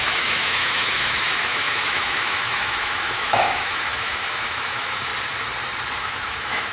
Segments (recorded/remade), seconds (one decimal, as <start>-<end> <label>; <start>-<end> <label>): 0.0-5.1 remade; 5.1-6.0 recorded; 6.0-6.7 remade